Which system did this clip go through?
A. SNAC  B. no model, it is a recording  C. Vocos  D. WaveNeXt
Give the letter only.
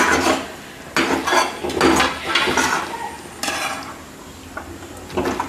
B